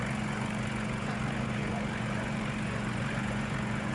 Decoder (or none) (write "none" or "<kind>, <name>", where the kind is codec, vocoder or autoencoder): vocoder, Vocos